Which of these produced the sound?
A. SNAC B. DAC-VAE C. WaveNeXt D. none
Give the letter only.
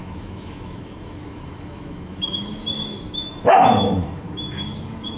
B